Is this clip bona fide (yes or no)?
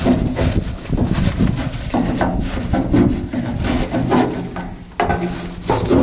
yes